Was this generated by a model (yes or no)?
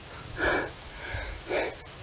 no